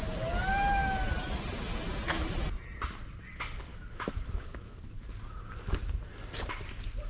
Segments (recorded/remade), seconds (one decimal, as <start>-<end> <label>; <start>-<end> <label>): 0.0-3.7 recorded; 3.7-4.9 remade; 4.9-7.1 recorded